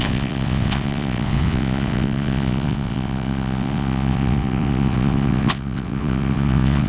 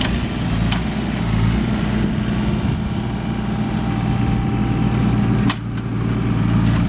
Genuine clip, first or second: second